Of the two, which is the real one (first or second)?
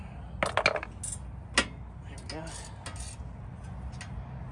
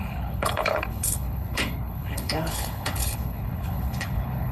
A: first